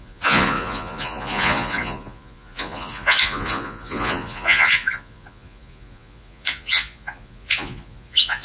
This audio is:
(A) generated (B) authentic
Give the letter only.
A